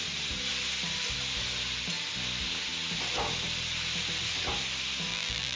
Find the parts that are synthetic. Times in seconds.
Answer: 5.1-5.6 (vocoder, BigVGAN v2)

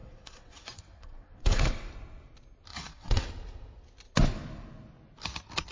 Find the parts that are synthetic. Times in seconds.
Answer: 0.0-1.9 (vocoder, WaveNeXt); 2.7-3.3